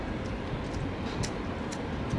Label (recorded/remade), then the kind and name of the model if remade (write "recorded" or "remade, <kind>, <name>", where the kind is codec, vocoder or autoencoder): recorded